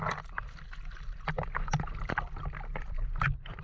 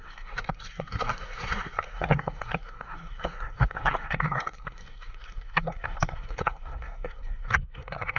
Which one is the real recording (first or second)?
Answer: first